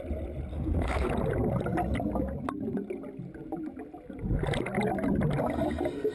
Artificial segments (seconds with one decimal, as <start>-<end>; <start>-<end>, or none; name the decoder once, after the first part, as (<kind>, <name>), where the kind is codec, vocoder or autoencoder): 0.5-1.1 (codec, SNAC)